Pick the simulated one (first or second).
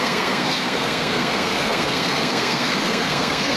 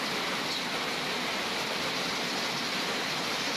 first